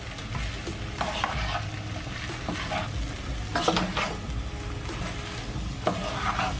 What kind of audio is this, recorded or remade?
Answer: recorded